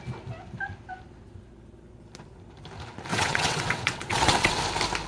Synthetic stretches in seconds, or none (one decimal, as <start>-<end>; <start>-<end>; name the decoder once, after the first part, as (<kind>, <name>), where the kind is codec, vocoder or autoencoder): 3.1-4.6 (vocoder, WaveNeXt)